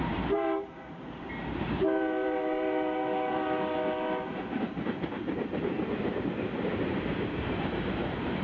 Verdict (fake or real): fake